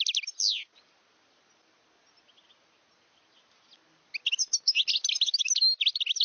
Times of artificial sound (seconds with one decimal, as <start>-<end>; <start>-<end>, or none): none